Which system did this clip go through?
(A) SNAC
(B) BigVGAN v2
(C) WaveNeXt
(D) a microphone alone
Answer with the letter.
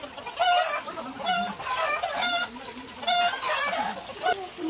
D